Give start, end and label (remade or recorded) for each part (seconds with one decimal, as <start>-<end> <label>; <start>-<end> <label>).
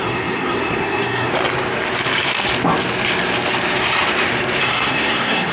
0.0-1.3 remade; 1.3-4.6 recorded; 4.6-5.5 remade